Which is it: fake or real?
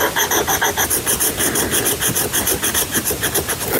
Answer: real